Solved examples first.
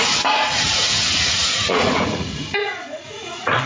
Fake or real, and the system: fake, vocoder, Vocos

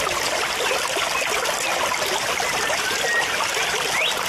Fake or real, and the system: real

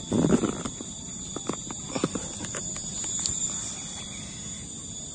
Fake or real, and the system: real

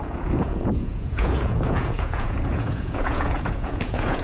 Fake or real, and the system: fake, vocoder, Vocos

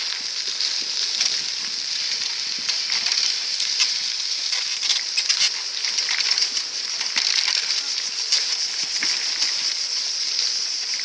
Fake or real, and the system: real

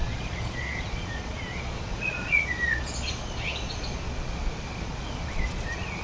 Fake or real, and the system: fake, vocoder, Vocos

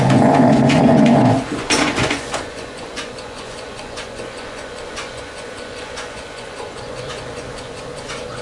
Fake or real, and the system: fake, vocoder, Vocos